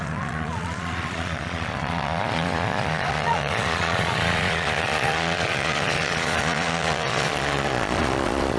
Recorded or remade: remade